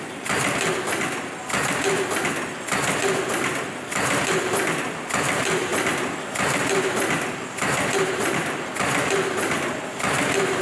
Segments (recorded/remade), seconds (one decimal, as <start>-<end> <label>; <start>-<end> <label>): 0.0-10.6 recorded